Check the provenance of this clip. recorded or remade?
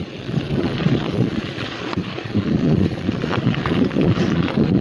remade